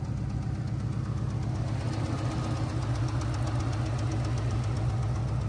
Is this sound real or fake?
real